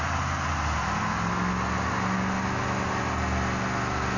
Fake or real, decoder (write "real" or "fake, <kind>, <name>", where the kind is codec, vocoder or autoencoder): real